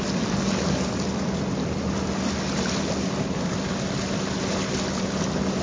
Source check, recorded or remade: recorded